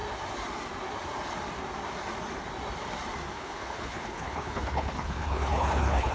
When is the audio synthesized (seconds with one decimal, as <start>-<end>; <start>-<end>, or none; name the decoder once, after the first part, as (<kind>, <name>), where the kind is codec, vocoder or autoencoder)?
3.3-6.1 (codec, HILCodec)